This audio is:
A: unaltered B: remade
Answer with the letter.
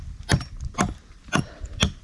A